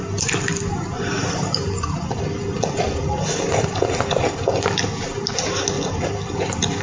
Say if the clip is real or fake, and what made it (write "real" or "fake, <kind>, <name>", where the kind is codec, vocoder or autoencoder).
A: real